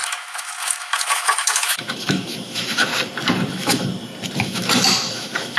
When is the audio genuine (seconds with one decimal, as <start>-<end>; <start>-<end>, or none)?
2.9-3.5; 3.9-4.4